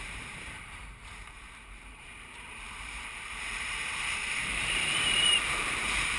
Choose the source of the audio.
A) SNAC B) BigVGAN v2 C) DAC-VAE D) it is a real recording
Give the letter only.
B